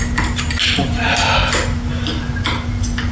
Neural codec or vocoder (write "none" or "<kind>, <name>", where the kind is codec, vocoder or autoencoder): none